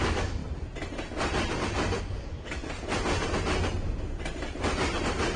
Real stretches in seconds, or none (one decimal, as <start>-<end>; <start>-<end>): 0.4-2.0; 2.6-5.4